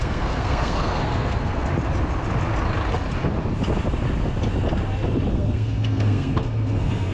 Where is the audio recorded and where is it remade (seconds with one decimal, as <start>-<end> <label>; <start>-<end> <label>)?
0.0-1.7 remade; 1.7-5.3 recorded; 5.3-7.1 remade